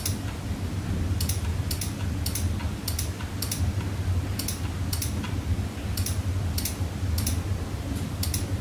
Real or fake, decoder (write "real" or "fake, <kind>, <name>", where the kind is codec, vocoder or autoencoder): real